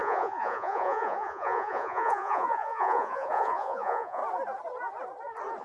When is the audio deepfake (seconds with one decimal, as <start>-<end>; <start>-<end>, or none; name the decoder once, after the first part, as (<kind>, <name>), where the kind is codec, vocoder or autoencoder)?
0.0-4.2 (vocoder, Vocos)